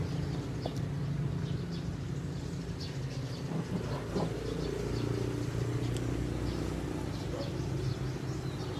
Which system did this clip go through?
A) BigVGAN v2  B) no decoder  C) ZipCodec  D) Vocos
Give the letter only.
B